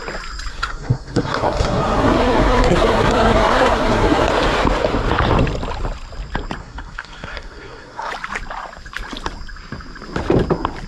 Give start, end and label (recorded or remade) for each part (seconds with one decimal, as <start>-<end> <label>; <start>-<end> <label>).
0.0-0.5 recorded; 0.5-4.3 remade; 4.3-6.6 recorded; 6.6-8.1 remade; 8.1-10.9 recorded